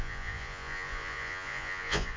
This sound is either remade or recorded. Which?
remade